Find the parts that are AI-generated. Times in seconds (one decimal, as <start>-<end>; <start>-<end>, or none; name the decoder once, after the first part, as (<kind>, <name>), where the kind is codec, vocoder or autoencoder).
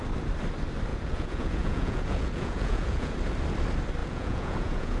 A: 0.9-3.1 (vocoder, Vocos); 4.0-5.0